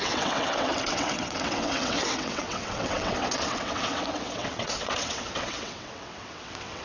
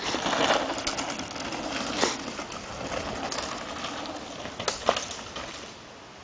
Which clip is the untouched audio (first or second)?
second